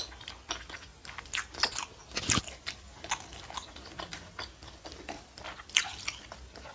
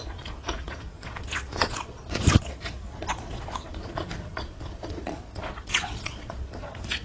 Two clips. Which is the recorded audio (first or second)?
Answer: first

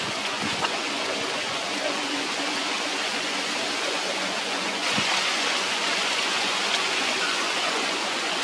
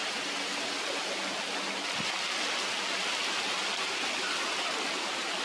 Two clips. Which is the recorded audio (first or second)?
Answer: second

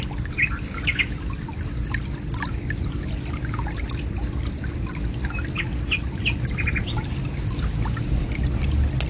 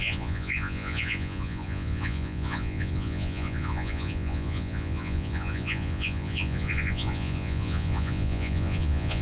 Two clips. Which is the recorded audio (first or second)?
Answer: first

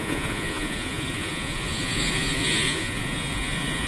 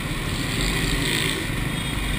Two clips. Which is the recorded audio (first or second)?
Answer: second